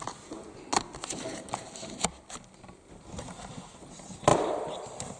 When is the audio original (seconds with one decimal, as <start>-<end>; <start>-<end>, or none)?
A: 0.0-4.3